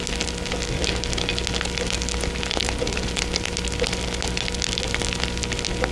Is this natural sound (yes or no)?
yes